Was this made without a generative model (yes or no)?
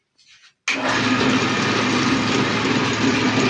yes